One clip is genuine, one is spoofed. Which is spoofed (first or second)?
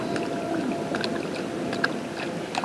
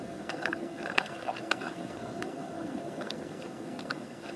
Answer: second